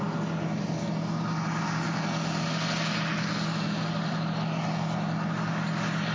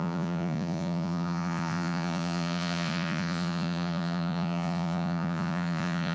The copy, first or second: second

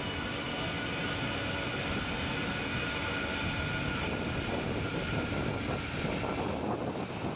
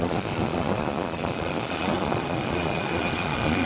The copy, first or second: second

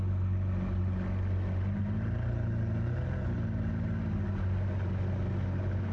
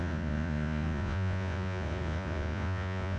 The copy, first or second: second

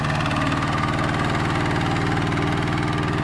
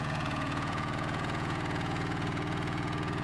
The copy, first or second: second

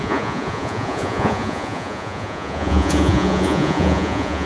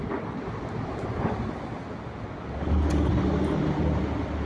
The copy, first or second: first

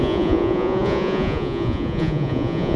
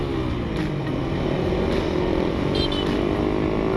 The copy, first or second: first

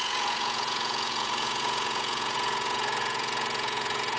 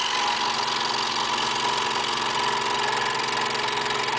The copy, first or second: first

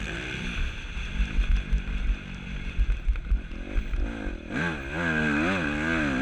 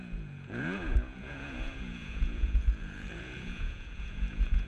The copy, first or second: second